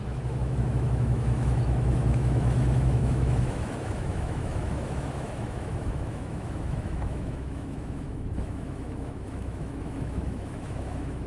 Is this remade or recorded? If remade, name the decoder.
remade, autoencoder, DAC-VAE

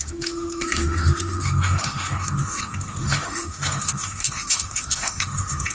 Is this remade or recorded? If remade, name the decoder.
remade, autoencoder, DAC-VAE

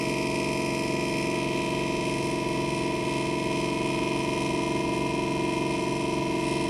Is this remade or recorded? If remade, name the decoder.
recorded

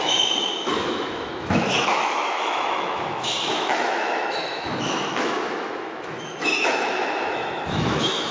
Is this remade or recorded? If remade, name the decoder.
remade, autoencoder, DAC-VAE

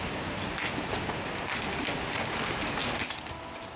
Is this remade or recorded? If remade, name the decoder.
recorded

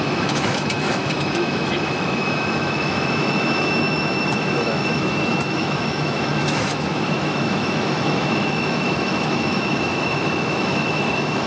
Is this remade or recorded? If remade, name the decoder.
remade, autoencoder, DAC-VAE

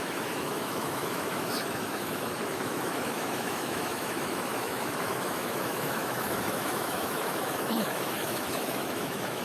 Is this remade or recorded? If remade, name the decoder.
remade, autoencoder, DAC-VAE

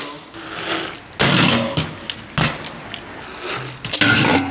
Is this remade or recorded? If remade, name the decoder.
recorded